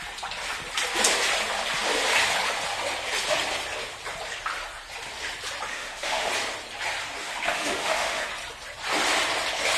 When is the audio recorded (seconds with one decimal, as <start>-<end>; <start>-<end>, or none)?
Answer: 0.0-5.7; 6.3-7.2; 8.3-9.8